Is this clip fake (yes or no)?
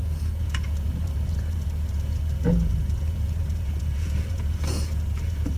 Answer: yes